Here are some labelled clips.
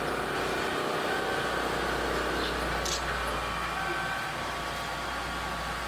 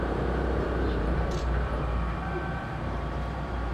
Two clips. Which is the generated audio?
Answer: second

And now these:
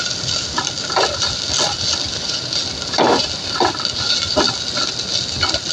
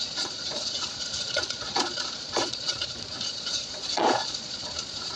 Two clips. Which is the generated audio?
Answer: second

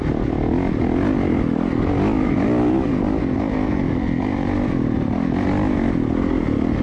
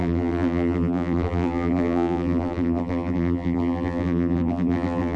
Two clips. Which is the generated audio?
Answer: second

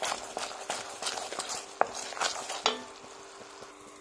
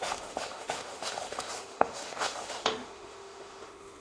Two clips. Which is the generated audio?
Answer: second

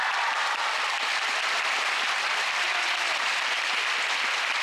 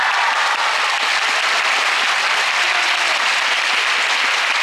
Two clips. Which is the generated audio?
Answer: first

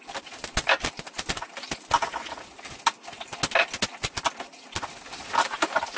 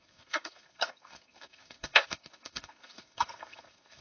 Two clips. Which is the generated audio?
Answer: second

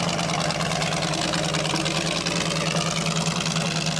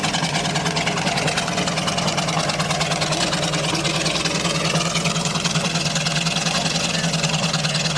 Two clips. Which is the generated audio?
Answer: second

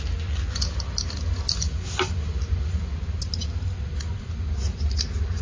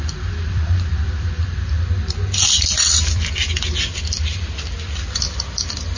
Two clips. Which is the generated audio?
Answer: second